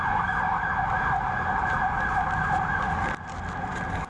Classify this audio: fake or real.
real